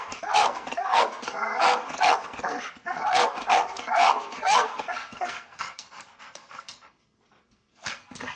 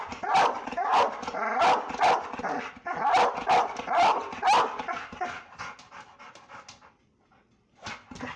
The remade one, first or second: first